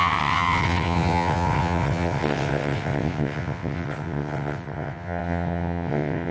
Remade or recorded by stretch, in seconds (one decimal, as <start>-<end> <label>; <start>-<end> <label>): 0.0-6.3 remade